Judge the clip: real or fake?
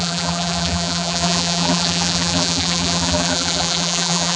fake